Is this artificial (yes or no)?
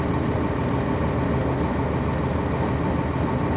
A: no